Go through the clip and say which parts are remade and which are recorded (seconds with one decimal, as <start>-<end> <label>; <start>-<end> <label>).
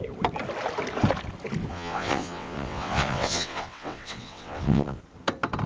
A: 0.0-1.7 recorded; 1.7-5.0 remade; 5.0-5.7 recorded